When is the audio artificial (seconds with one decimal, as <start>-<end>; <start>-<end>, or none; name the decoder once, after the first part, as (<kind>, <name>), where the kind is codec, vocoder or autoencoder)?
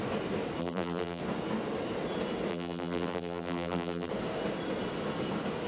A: 0.6-1.2 (vocoder, BigVGAN v2); 2.5-4.1